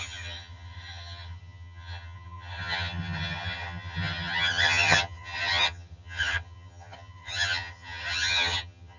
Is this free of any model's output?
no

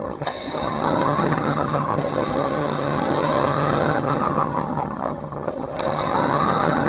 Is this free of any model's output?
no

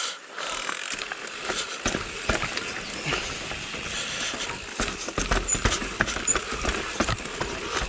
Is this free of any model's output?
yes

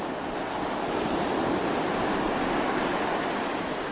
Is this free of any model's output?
yes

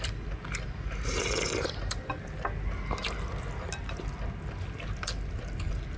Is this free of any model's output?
yes